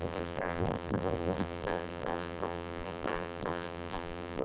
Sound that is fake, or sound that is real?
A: fake